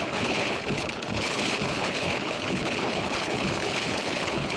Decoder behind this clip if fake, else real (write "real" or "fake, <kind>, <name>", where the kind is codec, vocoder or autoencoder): fake, codec, HILCodec